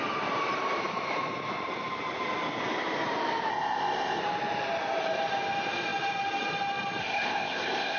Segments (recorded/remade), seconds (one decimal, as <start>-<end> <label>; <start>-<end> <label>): 0.0-3.5 recorded; 3.5-4.2 remade; 4.2-7.0 recorded; 7.0-8.0 remade